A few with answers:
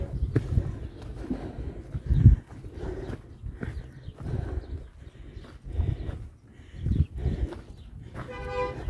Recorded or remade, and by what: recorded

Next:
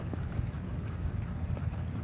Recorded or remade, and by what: remade, codec, DAC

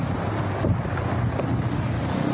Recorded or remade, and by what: recorded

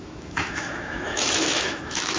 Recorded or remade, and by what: remade, autoencoder, DAC-VAE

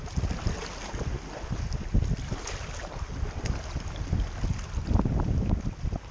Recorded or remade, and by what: recorded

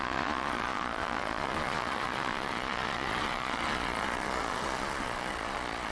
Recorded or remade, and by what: remade, vocoder, Vocos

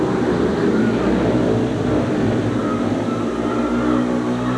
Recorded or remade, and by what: recorded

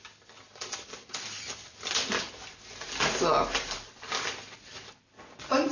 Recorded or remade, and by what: recorded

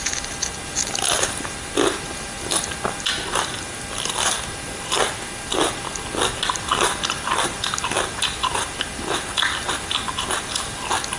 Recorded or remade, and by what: recorded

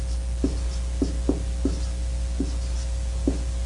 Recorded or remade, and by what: recorded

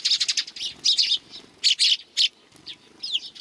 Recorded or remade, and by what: recorded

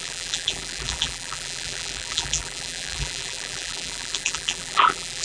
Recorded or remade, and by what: remade, vocoder, BigVGAN v2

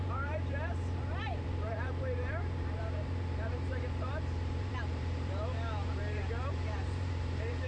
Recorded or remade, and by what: remade, vocoder, BigVGAN v2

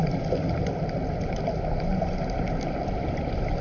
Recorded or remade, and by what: recorded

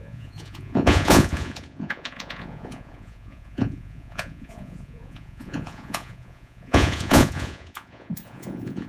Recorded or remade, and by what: remade, vocoder, Vocos